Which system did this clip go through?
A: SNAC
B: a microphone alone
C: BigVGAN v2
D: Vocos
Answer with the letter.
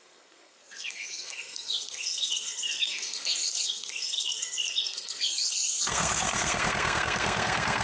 A